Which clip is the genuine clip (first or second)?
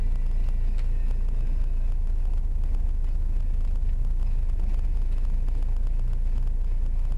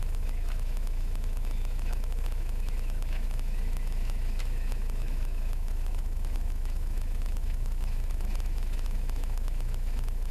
first